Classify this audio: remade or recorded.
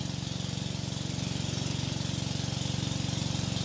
recorded